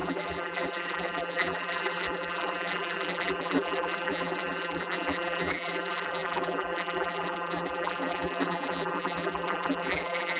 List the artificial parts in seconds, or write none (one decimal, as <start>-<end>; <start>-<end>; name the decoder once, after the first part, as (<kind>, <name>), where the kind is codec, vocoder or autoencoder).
0.0-10.4 (vocoder, BigVGAN v2)